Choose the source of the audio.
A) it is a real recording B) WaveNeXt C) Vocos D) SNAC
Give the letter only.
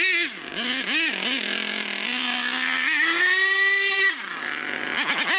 A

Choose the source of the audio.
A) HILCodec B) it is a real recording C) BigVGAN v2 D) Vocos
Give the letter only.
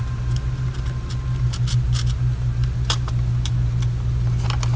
B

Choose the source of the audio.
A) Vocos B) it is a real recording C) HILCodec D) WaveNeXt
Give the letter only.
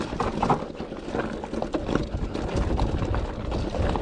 B